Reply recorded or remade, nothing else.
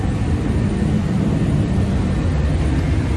recorded